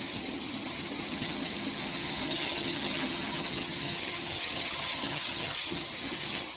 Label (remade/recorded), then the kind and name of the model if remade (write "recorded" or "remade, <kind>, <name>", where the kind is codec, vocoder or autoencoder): remade, vocoder, HiFi-GAN